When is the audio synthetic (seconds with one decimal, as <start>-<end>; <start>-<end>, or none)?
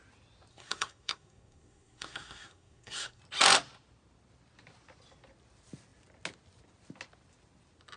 0.5-3.2